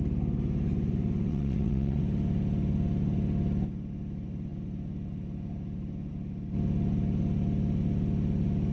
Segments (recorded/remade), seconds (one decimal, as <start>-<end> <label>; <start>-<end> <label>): 0.0-1.3 recorded; 1.3-2.0 remade; 2.0-8.7 recorded